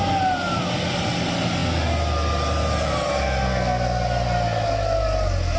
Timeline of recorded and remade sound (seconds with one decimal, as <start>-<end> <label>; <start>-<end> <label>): 0.0-5.6 recorded